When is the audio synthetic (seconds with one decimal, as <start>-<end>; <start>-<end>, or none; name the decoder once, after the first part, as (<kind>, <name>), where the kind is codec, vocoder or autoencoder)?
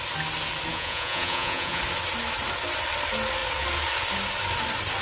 0.7-1.8 (vocoder, Vocos)